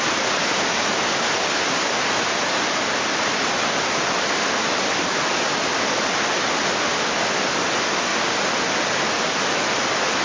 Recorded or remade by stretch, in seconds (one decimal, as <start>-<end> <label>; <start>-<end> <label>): 0.0-10.2 recorded